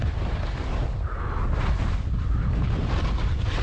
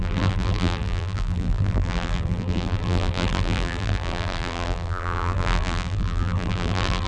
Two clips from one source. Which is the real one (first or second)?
first